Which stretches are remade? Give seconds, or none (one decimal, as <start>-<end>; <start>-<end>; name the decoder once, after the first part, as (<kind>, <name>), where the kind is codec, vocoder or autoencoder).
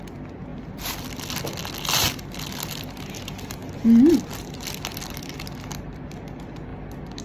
0.5-1.1 (vocoder, BigVGAN v2)